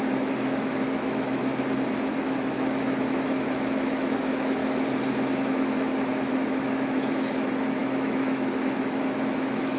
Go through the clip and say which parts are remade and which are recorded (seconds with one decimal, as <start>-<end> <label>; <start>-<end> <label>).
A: 0.0-1.4 remade; 1.4-2.2 recorded; 2.2-4.6 remade; 4.6-5.4 recorded; 5.4-9.8 remade